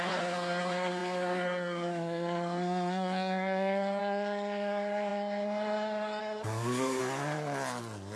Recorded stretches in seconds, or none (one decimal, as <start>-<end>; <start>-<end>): 7.0-8.2